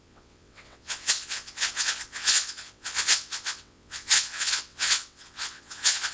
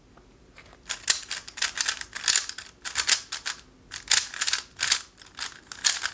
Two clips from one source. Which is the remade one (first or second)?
first